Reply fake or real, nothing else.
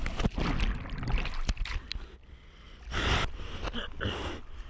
real